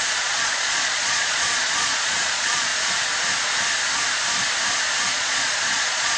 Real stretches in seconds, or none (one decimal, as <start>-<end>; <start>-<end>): 2.7-5.1